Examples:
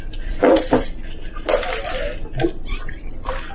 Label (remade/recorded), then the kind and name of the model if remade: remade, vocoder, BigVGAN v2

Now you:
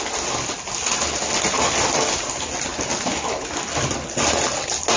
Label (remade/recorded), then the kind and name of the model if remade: recorded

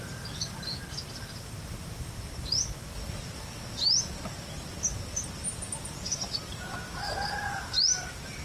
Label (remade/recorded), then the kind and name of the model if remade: recorded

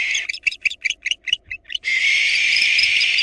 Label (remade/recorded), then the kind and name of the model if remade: remade, vocoder, BigVGAN v2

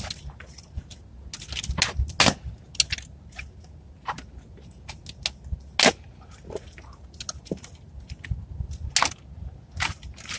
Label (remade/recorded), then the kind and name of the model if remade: recorded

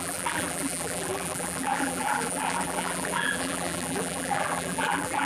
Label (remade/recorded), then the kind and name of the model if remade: remade, vocoder, BigVGAN v2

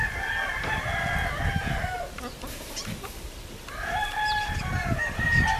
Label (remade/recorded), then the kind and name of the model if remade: recorded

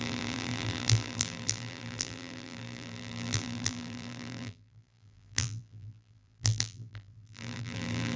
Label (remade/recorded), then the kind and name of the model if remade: remade, vocoder, BigVGAN v2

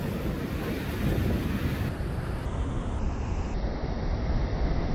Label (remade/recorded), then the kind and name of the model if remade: recorded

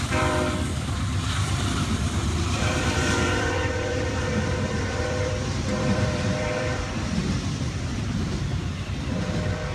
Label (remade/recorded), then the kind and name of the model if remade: remade, vocoder, BigVGAN v2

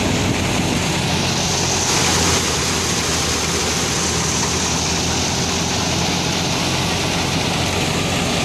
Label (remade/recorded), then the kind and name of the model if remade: recorded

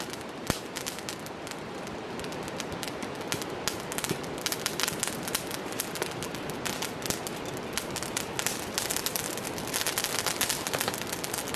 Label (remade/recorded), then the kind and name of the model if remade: recorded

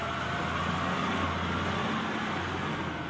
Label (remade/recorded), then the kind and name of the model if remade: recorded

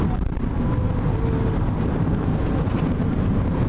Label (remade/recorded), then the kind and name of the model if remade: remade, vocoder, BigVGAN v2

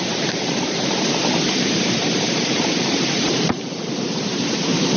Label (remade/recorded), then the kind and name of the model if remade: remade, vocoder, BigVGAN v2